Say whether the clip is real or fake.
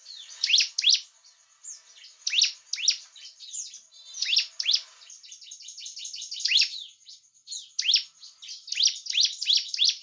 real